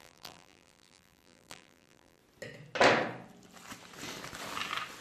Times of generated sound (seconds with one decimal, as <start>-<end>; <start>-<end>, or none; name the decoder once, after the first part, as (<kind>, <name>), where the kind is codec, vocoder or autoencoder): 0.0-2.2 (vocoder, BigVGAN v2)